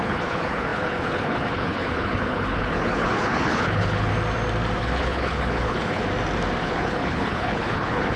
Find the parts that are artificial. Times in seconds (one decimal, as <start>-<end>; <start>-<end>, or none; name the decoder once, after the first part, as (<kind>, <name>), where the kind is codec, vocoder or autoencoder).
0.0-4.1 (codec, HILCodec); 4.8-6.0; 6.6-8.2

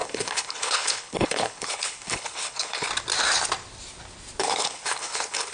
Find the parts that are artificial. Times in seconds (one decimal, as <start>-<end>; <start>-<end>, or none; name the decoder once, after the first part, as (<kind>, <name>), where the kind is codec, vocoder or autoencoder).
0.0-2.9 (codec, HILCodec); 4.4-5.5

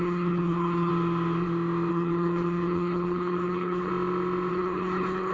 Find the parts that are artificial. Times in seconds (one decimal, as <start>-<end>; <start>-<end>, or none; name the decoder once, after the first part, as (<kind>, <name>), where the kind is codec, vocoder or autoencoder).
0.0-0.9 (codec, HILCodec); 1.9-3.9; 4.5-5.3

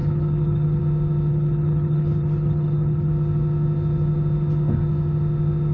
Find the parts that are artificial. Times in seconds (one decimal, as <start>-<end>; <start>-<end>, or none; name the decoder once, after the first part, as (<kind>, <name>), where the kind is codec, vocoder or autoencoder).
0.0-0.8 (codec, HILCodec); 1.3-3.1

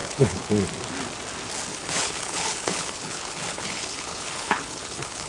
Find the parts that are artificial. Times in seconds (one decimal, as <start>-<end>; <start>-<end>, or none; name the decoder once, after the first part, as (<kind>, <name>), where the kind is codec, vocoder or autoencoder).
0.0-0.5 (codec, HILCodec); 1.7-5.3

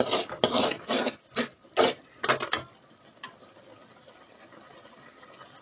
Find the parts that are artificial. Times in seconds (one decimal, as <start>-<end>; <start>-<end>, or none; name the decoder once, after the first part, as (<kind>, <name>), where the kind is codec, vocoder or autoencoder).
none

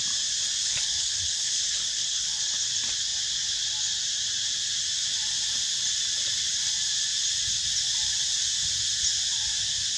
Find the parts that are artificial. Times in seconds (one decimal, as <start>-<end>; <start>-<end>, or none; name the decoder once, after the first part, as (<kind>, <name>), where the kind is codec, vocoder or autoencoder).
0.6-2.4 (codec, HILCodec)

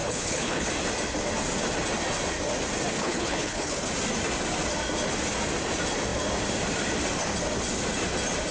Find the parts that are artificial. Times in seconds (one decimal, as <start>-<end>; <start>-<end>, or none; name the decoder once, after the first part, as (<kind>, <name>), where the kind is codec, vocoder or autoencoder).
0.0-0.7 (codec, HILCodec); 3.0-3.9